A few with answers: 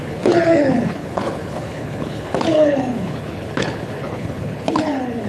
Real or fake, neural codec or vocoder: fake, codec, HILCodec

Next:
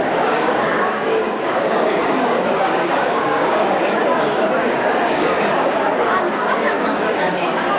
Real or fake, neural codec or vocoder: fake, codec, DAC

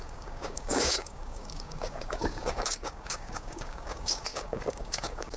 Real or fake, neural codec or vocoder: fake, codec, DAC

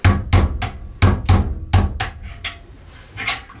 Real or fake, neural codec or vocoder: real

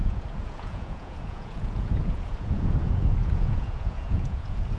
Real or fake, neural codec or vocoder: fake, vocoder, Vocos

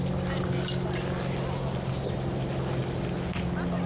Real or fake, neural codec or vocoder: real